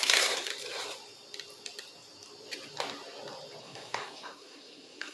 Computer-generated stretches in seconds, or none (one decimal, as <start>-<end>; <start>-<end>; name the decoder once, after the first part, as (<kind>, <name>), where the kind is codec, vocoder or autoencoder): 0.0-0.5 (codec, SNAC); 3.6-5.1

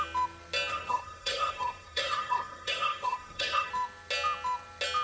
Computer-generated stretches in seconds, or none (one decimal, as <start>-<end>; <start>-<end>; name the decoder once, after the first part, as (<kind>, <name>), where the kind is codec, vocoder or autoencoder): 0.7-3.7 (codec, SNAC)

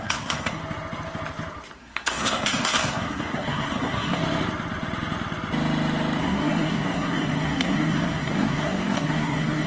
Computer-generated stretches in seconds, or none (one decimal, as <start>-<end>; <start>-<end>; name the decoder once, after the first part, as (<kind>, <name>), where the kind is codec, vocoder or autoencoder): 0.0-0.6 (codec, SNAC); 1.8-4.2; 6.2-9.7

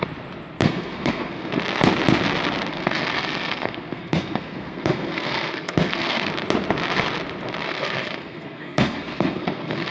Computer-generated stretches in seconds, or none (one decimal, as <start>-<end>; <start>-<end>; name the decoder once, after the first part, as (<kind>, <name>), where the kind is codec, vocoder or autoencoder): 0.6-1.6 (codec, SNAC); 2.7-6.3; 7.6-9.9

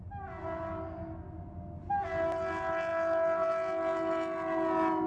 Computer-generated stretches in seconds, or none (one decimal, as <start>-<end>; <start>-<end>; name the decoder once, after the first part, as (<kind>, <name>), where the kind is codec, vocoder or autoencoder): none

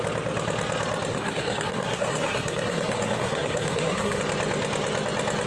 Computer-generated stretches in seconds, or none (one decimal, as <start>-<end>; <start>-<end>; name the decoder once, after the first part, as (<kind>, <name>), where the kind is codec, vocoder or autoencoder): 1.1-4.2 (codec, SNAC)